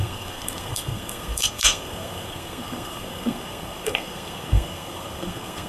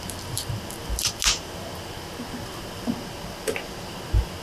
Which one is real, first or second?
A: second